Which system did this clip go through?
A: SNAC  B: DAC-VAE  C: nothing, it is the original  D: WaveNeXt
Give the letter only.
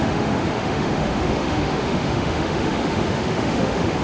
B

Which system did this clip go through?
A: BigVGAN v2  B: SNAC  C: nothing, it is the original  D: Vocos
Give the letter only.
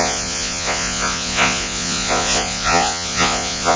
D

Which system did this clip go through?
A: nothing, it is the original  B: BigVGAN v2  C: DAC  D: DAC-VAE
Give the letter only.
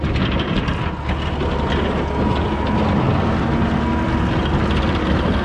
A